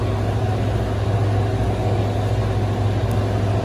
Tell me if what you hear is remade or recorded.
recorded